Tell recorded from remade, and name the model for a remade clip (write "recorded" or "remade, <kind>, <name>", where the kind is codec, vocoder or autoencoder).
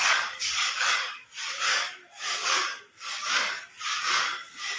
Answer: remade, codec, DAC